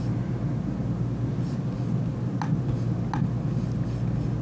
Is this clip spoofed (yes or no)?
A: no